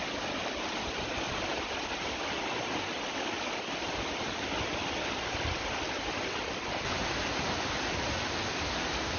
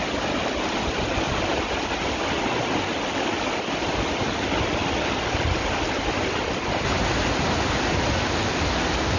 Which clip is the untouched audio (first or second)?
second